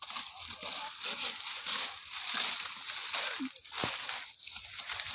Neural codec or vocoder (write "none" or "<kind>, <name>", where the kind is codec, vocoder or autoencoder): none